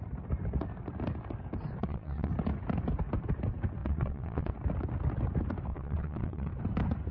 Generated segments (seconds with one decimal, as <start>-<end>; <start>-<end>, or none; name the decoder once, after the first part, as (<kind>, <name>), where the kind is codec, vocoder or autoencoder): 1.8-2.3 (vocoder, WaveNeXt); 3.8-4.5; 5.7-6.5